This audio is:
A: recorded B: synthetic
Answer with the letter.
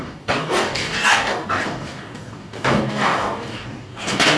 B